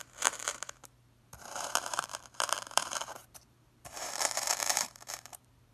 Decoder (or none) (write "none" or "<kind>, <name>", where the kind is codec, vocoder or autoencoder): vocoder, BigVGAN v2